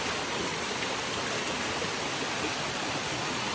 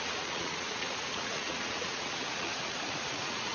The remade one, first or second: second